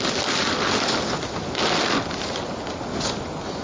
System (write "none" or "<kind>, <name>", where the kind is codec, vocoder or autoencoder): none